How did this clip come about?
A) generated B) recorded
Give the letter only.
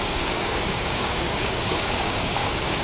A